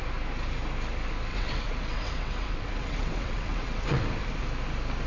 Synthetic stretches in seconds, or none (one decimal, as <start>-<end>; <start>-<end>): 1.3-4.4